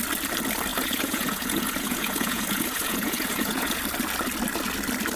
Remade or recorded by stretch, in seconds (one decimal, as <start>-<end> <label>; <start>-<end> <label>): 0.0-0.7 recorded; 0.7-3.8 remade; 3.8-5.2 recorded